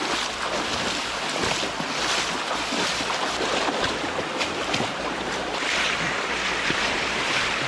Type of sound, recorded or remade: remade